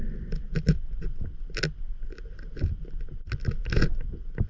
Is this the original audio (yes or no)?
yes